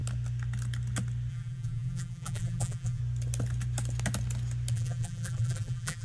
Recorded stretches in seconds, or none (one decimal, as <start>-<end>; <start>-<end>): 0.0-1.3; 3.0-4.7